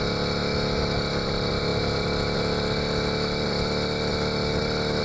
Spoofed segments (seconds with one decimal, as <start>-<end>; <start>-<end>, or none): none